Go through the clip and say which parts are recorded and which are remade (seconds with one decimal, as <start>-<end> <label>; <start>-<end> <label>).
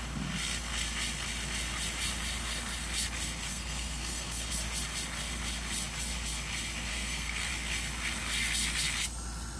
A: 0.0-3.5 recorded; 3.5-4.5 remade; 4.5-6.9 recorded; 6.9-7.5 remade; 7.5-9.6 recorded